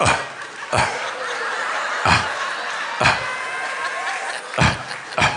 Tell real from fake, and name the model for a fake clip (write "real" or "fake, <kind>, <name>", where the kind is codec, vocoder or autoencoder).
real